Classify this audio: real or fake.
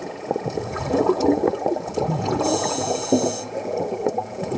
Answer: fake